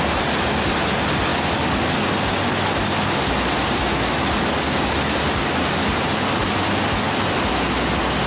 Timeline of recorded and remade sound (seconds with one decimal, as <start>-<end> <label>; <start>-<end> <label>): 0.0-8.3 recorded